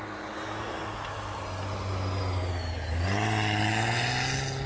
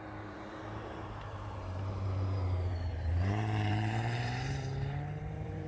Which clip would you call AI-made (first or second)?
second